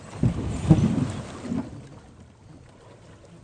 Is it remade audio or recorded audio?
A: recorded